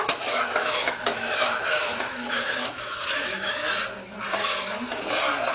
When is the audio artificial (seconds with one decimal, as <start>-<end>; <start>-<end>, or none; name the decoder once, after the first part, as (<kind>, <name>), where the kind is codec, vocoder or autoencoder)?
0.0-3.6 (autoencoder, DAC-VAE)